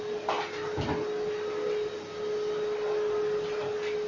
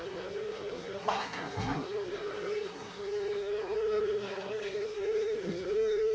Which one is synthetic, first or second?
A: second